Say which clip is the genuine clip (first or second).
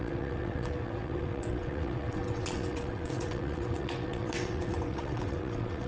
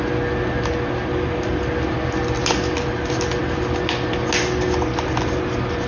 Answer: second